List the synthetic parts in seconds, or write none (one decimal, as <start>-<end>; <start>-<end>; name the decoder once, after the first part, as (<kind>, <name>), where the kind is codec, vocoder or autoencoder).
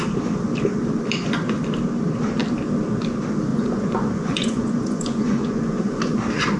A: 3.5-6.1 (vocoder, Vocos)